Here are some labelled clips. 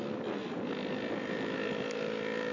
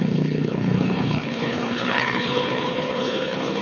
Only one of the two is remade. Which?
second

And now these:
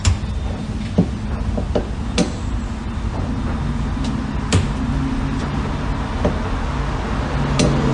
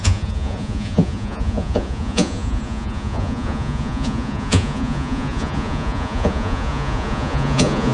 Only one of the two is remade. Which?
second